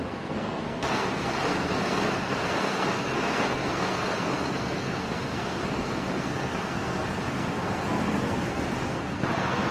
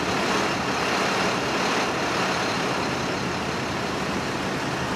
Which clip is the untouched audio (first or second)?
second